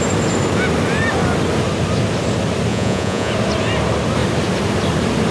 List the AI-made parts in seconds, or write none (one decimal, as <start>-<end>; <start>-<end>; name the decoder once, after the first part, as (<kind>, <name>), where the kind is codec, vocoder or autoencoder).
2.7-3.3 (vocoder, Vocos)